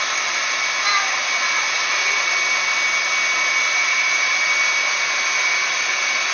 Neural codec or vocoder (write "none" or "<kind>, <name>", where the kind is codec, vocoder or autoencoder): none